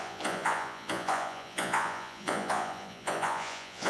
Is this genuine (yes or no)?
no